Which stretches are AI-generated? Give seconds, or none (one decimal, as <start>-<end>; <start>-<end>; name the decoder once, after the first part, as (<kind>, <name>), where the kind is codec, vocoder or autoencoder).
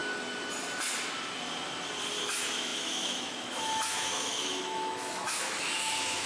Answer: 2.2-6.3 (autoencoder, DAC-VAE)